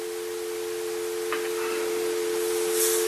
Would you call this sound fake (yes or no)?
no